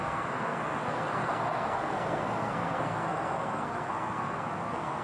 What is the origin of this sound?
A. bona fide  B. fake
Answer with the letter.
B